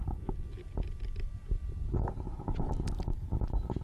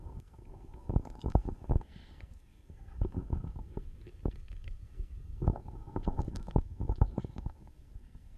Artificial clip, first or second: second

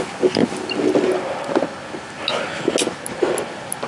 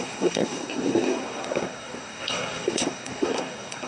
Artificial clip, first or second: second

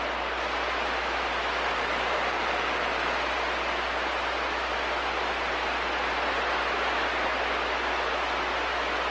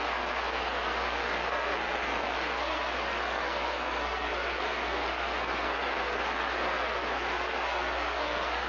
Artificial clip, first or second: second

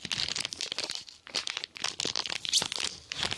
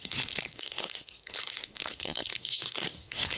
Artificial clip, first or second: second